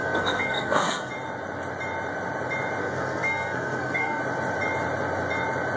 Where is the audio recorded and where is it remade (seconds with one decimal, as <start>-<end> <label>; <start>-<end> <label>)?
0.0-1.1 remade; 1.1-2.8 recorded; 2.8-4.2 remade; 4.2-5.8 recorded